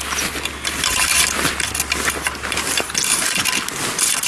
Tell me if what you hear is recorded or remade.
recorded